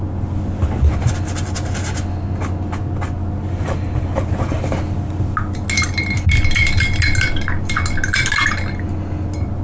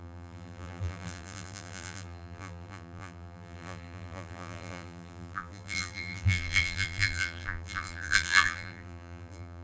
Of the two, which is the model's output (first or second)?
second